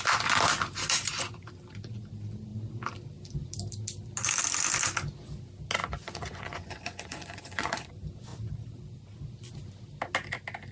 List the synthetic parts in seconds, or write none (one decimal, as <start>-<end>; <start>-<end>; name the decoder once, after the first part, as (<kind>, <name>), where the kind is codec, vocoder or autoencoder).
5.8-7.9 (vocoder, Vocos)